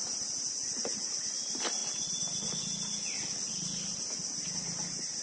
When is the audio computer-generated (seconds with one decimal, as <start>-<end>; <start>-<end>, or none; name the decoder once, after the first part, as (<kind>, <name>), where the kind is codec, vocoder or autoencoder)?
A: 0.0-0.8 (vocoder, BigVGAN v2)